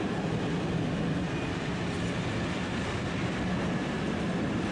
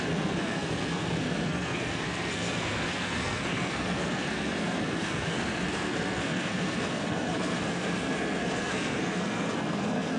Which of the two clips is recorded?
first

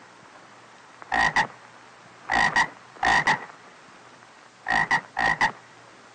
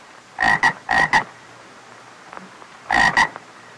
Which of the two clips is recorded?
first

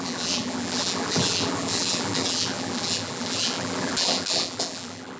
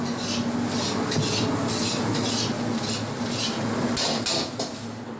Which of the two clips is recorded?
second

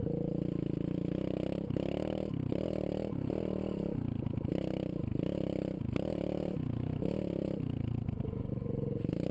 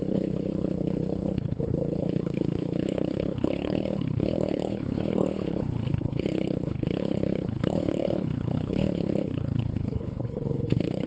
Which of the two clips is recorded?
first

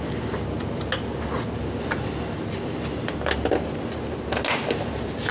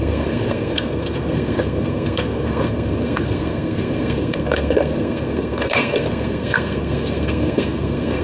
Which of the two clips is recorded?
first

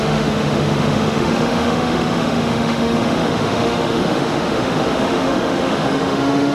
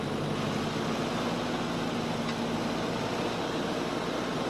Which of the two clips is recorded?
second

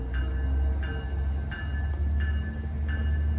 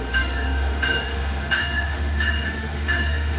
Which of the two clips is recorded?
first